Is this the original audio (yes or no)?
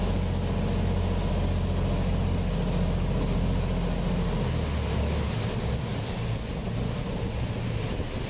yes